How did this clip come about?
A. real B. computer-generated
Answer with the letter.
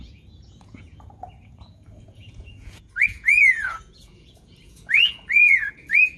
B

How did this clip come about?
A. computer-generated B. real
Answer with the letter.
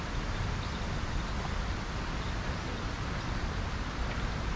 B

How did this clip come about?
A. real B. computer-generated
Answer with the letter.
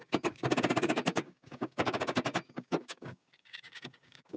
B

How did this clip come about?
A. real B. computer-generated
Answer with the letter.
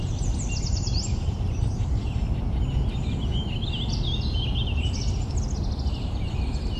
A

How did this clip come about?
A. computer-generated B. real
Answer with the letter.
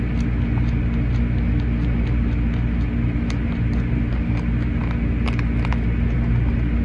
B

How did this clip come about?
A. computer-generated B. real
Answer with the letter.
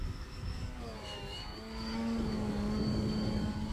A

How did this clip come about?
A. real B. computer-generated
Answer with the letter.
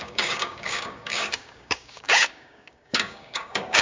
B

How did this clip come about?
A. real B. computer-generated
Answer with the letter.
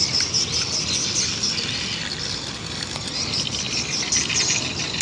A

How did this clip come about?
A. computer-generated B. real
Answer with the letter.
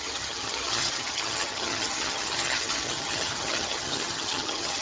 A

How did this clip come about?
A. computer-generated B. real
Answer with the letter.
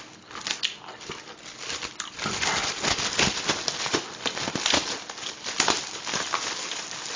B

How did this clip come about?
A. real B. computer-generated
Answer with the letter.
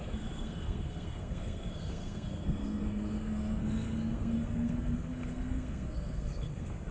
B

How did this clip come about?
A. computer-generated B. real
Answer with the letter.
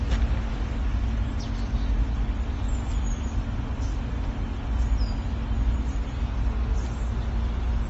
B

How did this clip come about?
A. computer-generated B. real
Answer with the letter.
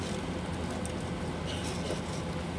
B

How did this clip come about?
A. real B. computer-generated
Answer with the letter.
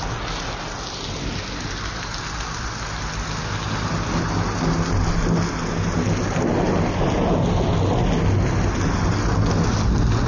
A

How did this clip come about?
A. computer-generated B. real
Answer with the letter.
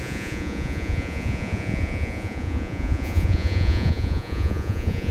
A